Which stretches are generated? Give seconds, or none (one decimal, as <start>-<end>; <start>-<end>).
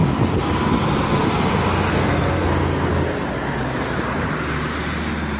1.9-2.9